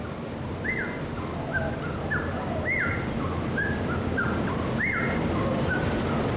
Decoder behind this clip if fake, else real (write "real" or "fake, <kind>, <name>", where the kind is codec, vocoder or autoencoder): fake, vocoder, BigVGAN v2